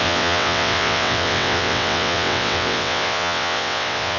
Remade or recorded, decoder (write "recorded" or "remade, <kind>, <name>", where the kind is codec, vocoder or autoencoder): remade, vocoder, WaveNeXt